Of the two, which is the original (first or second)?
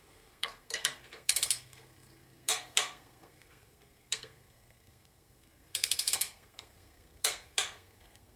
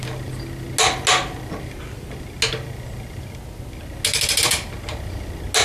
second